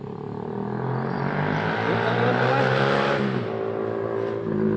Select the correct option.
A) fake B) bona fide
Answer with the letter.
B